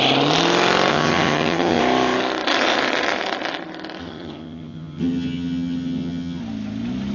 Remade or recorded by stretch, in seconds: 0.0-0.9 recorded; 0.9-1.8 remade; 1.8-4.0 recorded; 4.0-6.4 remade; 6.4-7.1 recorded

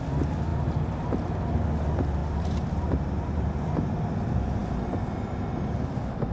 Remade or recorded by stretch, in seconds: 0.0-0.5 recorded; 0.5-1.5 remade; 1.5-2.2 recorded; 2.2-3.7 remade; 3.7-6.3 recorded